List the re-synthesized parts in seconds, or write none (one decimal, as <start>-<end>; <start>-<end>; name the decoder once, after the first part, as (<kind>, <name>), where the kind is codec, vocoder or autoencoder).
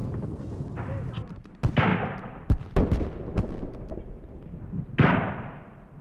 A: 0.0-0.5 (codec, SNAC)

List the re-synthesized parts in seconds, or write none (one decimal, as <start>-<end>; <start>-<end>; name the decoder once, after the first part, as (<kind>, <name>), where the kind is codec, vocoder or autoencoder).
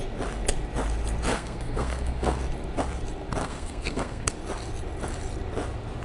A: 1.3-2.4 (codec, SNAC); 3.4-4.3